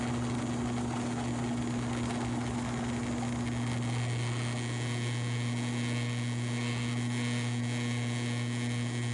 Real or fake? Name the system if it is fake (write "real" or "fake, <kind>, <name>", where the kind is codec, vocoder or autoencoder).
real